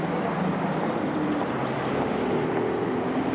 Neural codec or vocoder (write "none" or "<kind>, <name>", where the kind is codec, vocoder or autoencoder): vocoder, BigVGAN v2